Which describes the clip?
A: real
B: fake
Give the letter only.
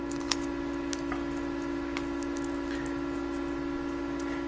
A